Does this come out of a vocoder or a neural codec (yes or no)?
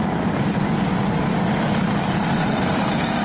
no